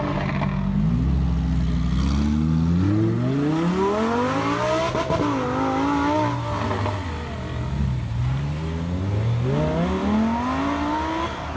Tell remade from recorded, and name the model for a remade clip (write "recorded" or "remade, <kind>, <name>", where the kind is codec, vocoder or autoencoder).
recorded